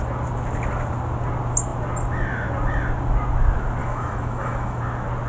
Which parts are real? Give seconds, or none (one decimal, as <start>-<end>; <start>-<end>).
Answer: 0.0-3.8; 4.8-5.3